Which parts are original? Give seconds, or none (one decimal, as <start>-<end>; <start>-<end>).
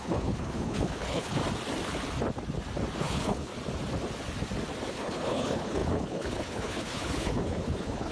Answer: 1.4-3.0; 3.5-4.9